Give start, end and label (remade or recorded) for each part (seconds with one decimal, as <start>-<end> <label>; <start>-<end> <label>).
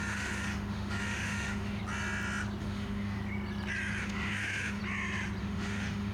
0.0-1.8 remade; 1.8-2.6 recorded; 2.6-3.2 remade; 3.2-4.0 recorded; 4.0-4.8 remade; 4.8-5.4 recorded; 5.4-6.1 remade